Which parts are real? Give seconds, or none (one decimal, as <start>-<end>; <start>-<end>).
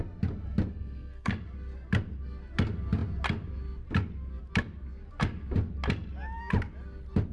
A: 0.0-0.7; 1.3-7.3